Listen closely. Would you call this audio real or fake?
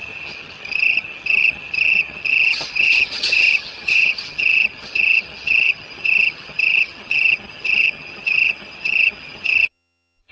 fake